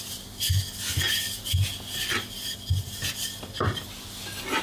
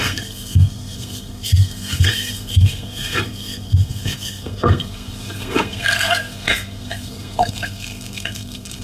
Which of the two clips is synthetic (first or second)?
second